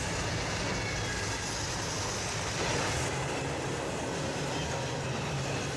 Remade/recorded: recorded